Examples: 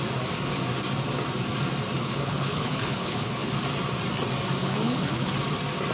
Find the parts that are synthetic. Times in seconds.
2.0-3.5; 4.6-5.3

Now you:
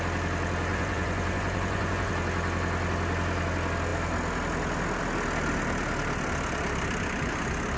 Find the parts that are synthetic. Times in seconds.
0.7-2.1

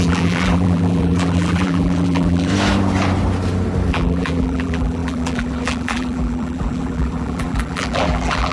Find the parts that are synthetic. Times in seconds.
0.0-2.5; 3.9-8.5

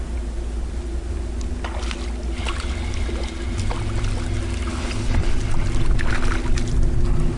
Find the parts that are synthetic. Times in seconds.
4.7-5.4

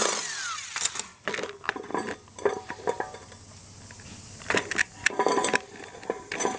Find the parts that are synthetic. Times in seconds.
0.0-1.9; 2.5-6.6

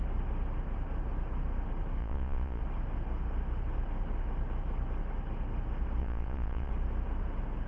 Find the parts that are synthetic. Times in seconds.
2.0-2.6; 6.0-6.7

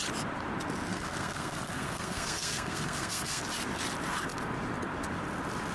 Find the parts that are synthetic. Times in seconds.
0.9-3.4